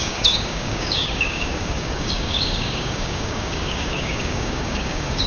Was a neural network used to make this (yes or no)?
yes